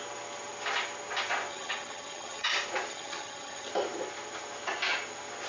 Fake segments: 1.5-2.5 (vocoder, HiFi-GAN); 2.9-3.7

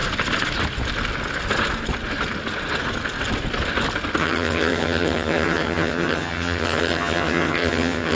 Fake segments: 4.2-8.1 (vocoder, HiFi-GAN)

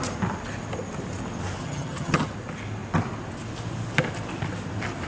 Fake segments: 1.6-2.3 (vocoder, HiFi-GAN)

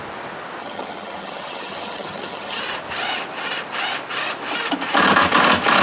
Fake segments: 0.6-2.6 (vocoder, HiFi-GAN)

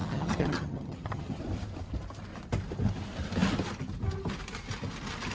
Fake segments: 0.0-1.4 (vocoder, HiFi-GAN)